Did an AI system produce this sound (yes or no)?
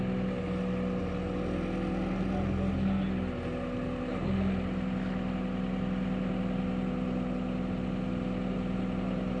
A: no